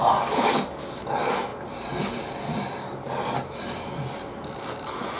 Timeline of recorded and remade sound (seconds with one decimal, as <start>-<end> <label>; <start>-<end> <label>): 0.0-1.1 remade; 1.1-5.2 recorded

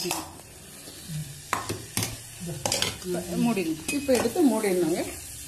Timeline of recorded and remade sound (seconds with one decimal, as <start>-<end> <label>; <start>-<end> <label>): 0.0-4.4 recorded; 4.4-4.9 remade; 4.9-5.5 recorded

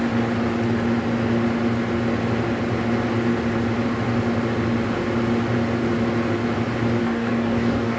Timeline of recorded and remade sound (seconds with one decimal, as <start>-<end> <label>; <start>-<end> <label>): 0.0-7.0 recorded; 7.0-8.0 remade

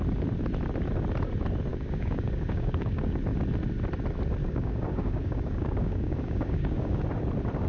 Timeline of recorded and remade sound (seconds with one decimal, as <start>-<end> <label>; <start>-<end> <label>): 0.0-1.7 recorded; 1.7-3.2 remade; 3.2-4.4 recorded; 4.4-7.0 remade; 7.0-7.7 recorded